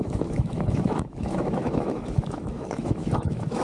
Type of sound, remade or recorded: remade